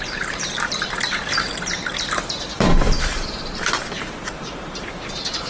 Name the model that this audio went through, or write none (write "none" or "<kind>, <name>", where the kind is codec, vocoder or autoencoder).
vocoder, BigVGAN v2